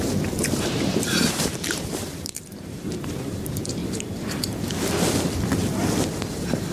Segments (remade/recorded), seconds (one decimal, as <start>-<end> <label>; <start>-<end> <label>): 0.0-3.8 remade; 3.8-6.2 recorded; 6.2-6.7 remade